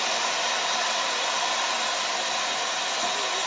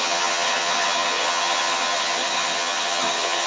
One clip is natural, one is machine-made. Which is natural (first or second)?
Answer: first